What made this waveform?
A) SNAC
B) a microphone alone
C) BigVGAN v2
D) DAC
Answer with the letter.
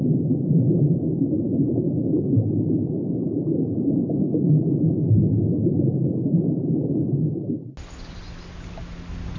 B